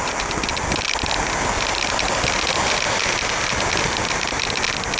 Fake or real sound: real